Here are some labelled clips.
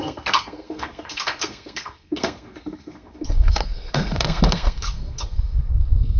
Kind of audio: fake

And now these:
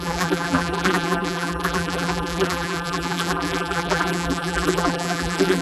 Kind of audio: fake